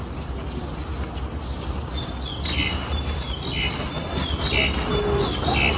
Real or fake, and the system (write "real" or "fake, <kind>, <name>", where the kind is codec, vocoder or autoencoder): real